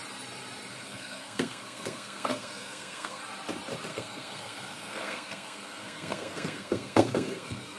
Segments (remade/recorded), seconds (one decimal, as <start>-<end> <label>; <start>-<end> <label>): 0.0-0.7 recorded; 0.7-3.2 remade; 3.2-3.9 recorded; 3.9-7.8 remade